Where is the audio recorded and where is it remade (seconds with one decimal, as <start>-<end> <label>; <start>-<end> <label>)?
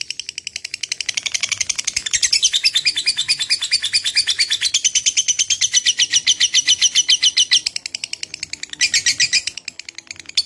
0.0-10.5 recorded